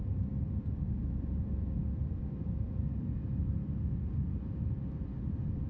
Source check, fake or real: fake